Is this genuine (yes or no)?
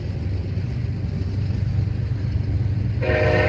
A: yes